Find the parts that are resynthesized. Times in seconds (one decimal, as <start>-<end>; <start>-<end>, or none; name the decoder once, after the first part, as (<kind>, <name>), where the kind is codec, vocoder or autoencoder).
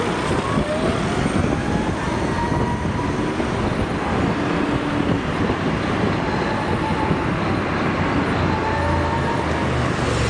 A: none